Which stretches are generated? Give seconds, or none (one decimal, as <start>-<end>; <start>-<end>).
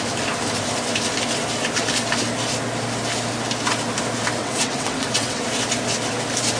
4.4-5.4